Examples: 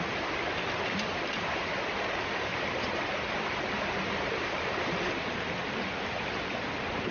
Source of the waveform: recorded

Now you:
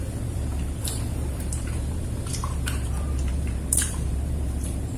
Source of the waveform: remade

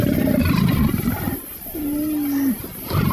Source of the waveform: recorded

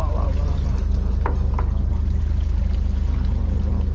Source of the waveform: recorded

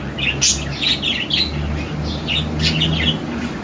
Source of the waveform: recorded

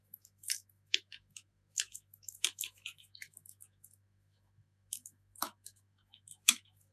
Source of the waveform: remade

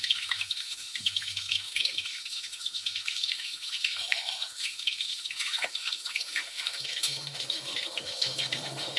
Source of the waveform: remade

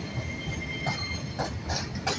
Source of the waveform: recorded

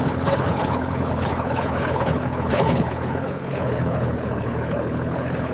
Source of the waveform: remade